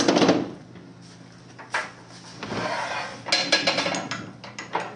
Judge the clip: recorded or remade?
recorded